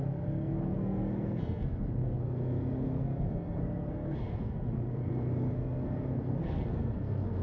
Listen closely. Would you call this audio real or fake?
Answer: fake